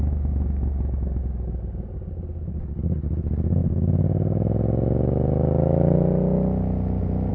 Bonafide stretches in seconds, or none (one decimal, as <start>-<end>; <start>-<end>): 0.0-7.3